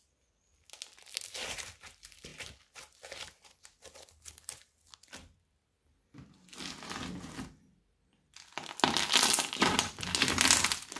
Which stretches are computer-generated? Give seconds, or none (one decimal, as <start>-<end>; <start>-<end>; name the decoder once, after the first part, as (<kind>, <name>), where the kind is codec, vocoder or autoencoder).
none